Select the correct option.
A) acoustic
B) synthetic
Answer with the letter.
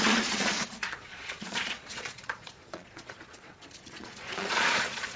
B